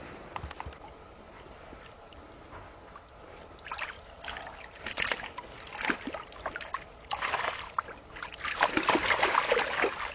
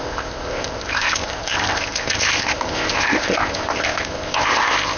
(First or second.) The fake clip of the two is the second